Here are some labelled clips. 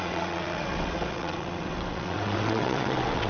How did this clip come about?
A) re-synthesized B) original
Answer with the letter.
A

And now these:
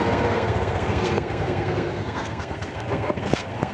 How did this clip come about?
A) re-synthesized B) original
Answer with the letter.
A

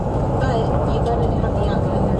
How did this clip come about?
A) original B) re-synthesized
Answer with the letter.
A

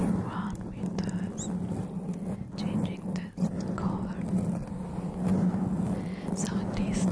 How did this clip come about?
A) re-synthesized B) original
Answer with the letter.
B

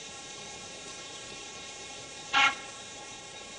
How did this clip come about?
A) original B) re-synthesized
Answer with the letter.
B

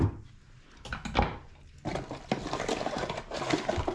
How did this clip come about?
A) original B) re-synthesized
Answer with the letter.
A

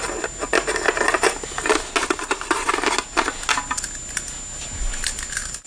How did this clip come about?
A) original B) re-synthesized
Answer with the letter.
A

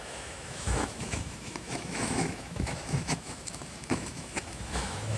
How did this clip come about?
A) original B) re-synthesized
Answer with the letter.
B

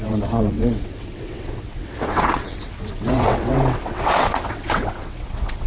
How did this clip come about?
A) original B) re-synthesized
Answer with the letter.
B